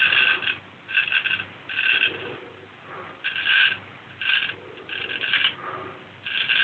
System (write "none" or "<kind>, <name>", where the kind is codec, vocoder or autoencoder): none